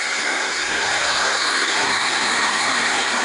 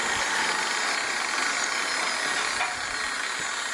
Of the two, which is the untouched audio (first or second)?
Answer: second